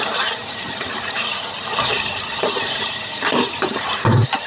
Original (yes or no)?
no